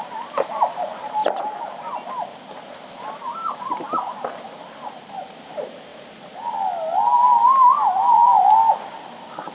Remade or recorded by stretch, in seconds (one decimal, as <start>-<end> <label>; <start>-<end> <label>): 0.0-9.5 recorded

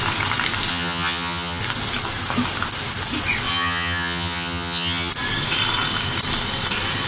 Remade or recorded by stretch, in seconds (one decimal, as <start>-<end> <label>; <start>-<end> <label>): 0.0-0.7 recorded; 0.7-1.6 remade; 1.6-3.5 recorded; 3.5-5.1 remade; 5.1-7.1 recorded

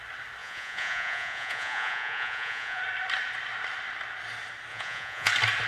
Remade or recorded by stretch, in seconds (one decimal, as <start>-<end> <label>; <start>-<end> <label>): 0.0-0.4 recorded; 0.4-2.8 remade; 2.8-4.7 recorded; 4.7-5.3 remade; 5.3-5.7 recorded

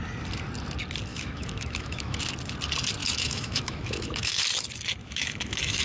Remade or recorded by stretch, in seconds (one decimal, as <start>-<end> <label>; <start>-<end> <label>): 0.0-1.1 recorded; 1.1-2.2 remade; 2.2-3.0 recorded; 3.0-4.4 remade; 4.4-5.0 recorded; 5.0-5.8 remade

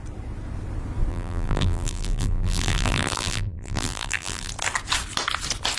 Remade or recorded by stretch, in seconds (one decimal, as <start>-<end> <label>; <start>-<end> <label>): 0.0-1.1 recorded; 1.1-4.5 remade; 4.5-5.8 recorded

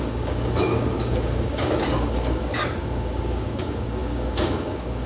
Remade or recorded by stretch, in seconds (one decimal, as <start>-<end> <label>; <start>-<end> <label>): 0.0-5.1 remade